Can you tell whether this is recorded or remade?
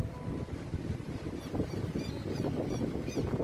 remade